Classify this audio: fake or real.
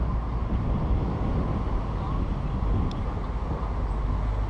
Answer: real